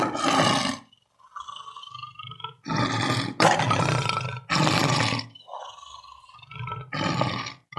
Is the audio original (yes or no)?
yes